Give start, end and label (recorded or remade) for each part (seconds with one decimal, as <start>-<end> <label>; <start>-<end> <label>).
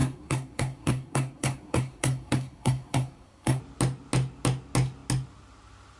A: 0.0-3.6 remade; 3.6-6.0 recorded